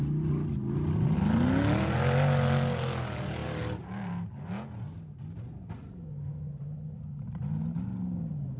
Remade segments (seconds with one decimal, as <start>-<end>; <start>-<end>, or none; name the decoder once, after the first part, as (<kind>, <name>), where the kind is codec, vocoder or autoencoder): none